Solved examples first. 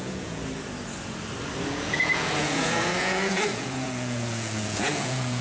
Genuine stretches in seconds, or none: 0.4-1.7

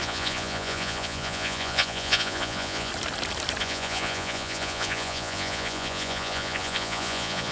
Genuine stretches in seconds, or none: 2.9-3.6

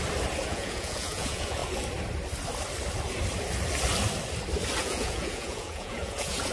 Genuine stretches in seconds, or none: 0.0-0.5; 1.6-4.8

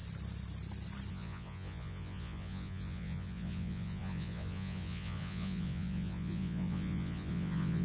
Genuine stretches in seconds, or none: 0.0-1.1

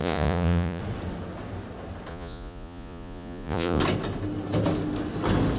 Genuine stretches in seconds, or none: 0.8-2.1; 3.8-5.6

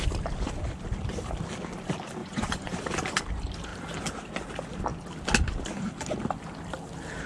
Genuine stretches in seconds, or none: 0.0-2.2; 2.8-7.3